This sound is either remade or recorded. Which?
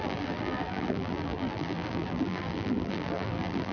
remade